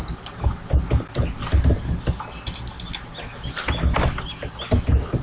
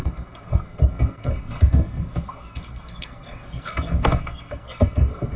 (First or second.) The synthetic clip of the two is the second